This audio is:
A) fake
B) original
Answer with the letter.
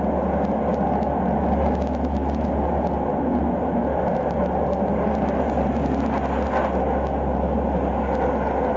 B